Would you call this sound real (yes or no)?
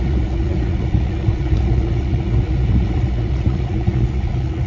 no